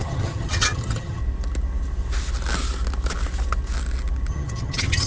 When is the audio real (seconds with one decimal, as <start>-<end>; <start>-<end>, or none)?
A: 1.2-4.3